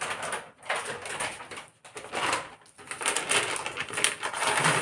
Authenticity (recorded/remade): recorded